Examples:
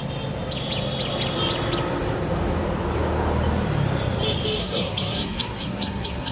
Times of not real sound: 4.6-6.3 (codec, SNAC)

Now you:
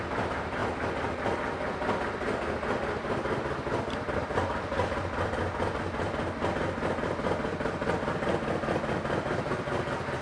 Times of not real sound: none

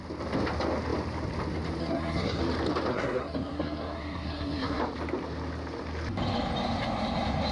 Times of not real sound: 1.8-2.4 (codec, SNAC); 2.9-4.8

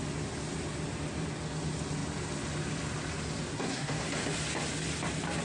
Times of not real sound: 3.5-4.1 (codec, SNAC)

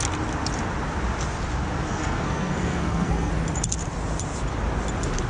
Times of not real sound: 1.9-3.3 (codec, SNAC)

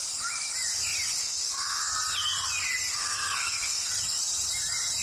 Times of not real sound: 1.2-1.9 (codec, SNAC); 2.9-3.9

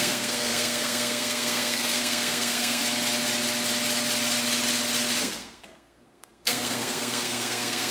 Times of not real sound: 0.0-2.8 (codec, SNAC); 5.2-7.9

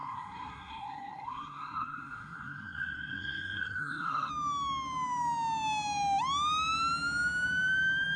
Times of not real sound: 0.0-4.3 (codec, SNAC)